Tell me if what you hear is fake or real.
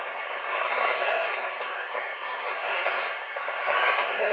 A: fake